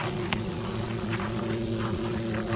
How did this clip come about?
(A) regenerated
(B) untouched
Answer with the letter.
A